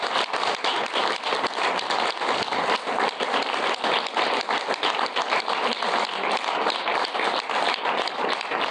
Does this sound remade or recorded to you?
recorded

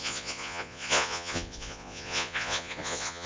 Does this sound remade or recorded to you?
remade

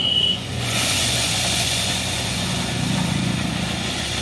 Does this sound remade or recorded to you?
remade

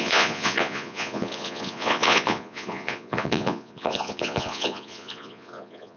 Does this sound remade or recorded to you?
remade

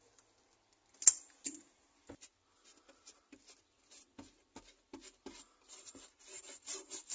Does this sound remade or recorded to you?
recorded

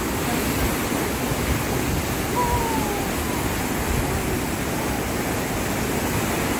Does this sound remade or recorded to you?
recorded